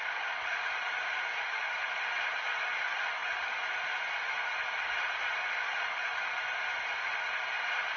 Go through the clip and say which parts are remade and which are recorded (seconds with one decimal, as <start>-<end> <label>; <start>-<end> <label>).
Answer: 0.0-0.8 recorded; 0.8-2.0 remade; 2.0-3.2 recorded; 3.2-4.0 remade; 4.0-4.4 recorded; 4.4-5.1 remade; 5.1-8.0 recorded